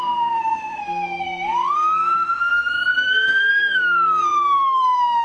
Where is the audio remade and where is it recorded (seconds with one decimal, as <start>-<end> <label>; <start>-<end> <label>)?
0.0-5.2 remade